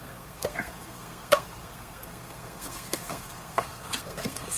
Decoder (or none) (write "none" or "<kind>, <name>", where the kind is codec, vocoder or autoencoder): codec, SNAC